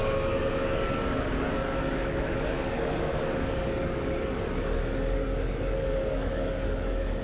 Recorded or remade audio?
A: remade